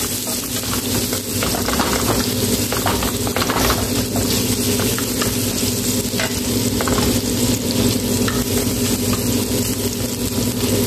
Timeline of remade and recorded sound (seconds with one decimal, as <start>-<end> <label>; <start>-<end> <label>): 0.0-10.9 recorded